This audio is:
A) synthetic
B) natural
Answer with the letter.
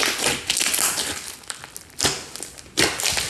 B